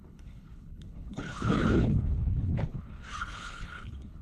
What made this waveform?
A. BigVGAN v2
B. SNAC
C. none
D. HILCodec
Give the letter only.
D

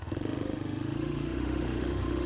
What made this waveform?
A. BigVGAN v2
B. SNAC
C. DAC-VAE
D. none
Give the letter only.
C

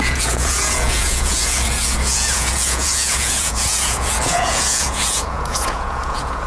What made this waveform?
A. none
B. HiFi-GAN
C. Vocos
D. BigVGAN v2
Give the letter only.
C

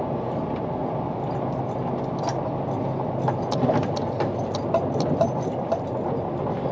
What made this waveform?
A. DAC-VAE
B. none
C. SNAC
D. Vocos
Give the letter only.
B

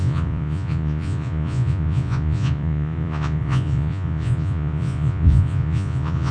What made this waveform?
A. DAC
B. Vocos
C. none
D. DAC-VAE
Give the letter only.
B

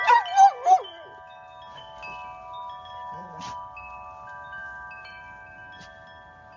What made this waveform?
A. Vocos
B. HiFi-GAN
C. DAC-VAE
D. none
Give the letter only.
D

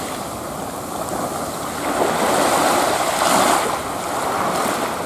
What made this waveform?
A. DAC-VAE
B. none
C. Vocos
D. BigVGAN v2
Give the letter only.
B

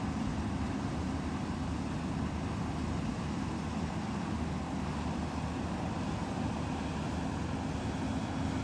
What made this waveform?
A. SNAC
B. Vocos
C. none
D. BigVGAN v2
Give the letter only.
C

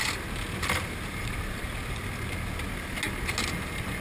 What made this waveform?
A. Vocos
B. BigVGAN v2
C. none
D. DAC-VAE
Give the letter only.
C